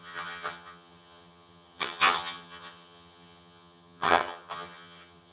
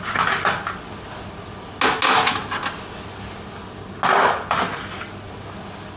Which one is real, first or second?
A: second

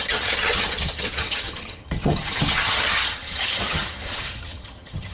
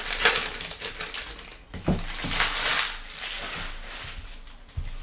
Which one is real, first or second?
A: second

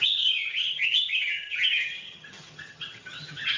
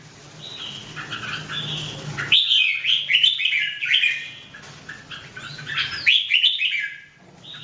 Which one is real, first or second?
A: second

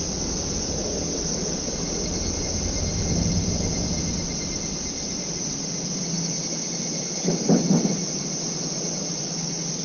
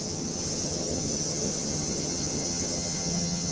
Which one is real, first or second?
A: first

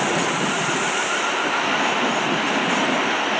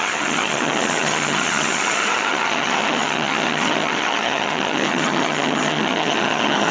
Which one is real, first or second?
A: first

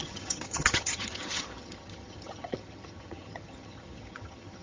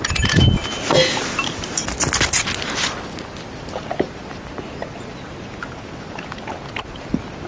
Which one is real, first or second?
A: second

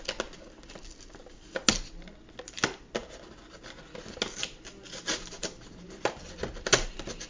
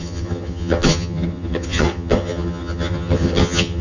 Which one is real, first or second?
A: first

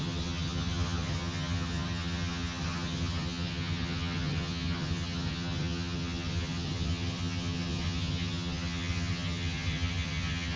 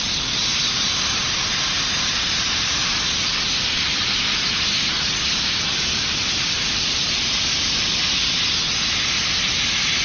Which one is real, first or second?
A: second